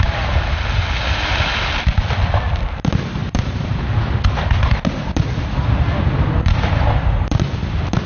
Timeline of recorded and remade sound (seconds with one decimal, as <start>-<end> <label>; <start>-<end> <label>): 0.0-8.1 recorded